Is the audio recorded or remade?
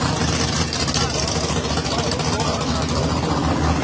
recorded